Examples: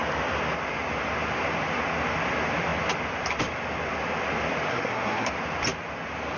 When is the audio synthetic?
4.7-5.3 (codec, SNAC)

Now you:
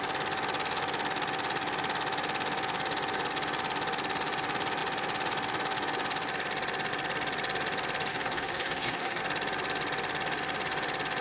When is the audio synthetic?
8.1-9.2 (codec, SNAC)